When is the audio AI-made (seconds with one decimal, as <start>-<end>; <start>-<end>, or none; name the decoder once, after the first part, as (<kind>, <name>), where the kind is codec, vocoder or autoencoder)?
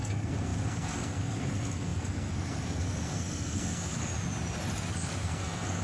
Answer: 0.0-4.1 (codec, SNAC); 4.9-5.8